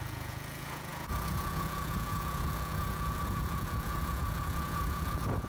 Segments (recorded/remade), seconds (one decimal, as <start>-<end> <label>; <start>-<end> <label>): 0.0-5.5 remade